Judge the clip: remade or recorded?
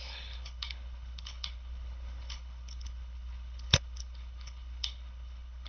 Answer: remade